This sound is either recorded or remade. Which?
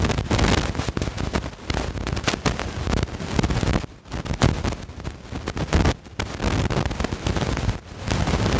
recorded